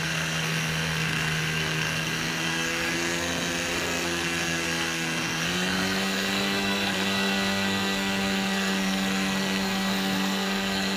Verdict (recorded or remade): remade